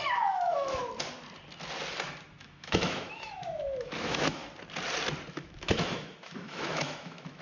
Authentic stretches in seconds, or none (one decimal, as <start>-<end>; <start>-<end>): 0.8-2.4; 4.4-5.3